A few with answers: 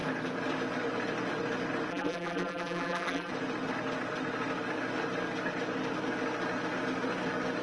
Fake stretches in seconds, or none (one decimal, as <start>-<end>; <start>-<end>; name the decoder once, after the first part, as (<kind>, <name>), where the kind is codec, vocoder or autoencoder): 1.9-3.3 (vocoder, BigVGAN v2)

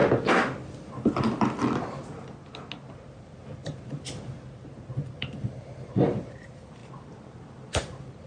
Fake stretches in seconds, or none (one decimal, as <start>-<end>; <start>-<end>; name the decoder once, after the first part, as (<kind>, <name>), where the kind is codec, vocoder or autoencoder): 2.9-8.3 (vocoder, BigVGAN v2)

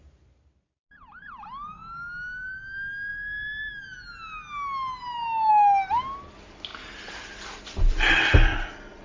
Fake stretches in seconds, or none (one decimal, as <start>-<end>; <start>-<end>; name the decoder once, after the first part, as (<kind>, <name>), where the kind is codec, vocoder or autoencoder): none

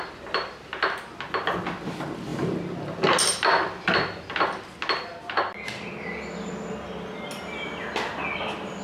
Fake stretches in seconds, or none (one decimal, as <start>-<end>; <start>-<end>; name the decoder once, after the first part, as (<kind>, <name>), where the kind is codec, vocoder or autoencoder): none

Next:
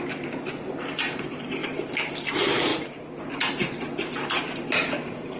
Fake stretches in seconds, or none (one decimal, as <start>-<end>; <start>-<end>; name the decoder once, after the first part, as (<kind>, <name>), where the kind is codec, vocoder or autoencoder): 0.0-1.6 (vocoder, BigVGAN v2); 2.3-5.4

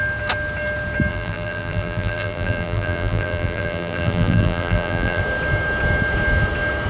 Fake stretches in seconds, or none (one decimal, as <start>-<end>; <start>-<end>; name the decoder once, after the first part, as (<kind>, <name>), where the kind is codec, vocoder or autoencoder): 1.1-5.2 (vocoder, BigVGAN v2)

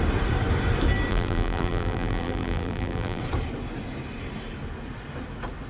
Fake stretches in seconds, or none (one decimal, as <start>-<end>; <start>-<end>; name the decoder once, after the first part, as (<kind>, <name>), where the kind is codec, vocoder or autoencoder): 1.1-3.2 (vocoder, BigVGAN v2)